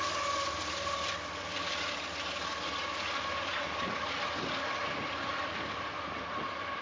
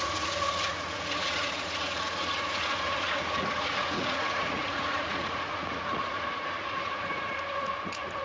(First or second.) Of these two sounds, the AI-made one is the second